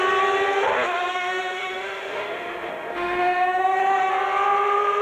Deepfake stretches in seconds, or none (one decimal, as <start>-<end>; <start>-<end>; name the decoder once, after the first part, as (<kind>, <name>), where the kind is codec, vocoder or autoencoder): 1.1-4.1 (autoencoder, DAC-VAE)